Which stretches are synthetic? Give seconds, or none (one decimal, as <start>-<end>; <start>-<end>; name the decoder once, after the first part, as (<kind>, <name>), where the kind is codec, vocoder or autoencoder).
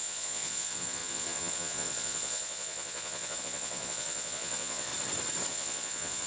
0.0-4.9 (vocoder, Vocos); 5.5-6.3